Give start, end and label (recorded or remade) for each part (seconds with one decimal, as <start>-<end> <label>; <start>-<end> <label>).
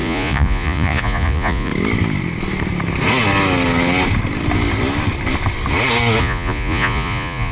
0.0-1.7 remade; 1.7-6.2 recorded; 6.2-7.5 remade